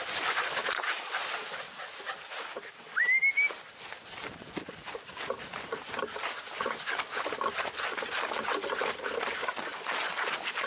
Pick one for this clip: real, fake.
real